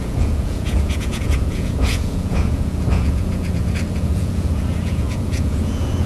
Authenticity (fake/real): fake